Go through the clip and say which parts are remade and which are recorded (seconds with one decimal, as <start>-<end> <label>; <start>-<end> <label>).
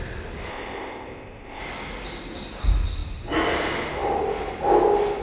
0.0-0.5 recorded; 0.5-1.6 remade; 1.6-5.2 recorded